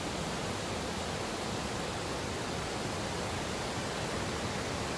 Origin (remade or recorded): recorded